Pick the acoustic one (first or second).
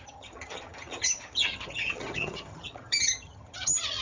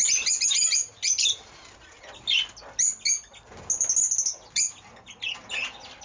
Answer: second